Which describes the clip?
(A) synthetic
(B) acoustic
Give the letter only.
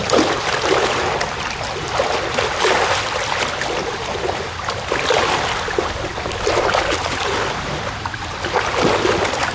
B